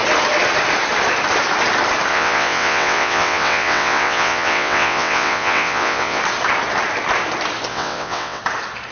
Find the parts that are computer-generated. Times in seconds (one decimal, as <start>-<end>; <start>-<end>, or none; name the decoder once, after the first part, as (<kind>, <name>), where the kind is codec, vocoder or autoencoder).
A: 2.1-6.2 (vocoder, WaveNeXt); 7.7-8.4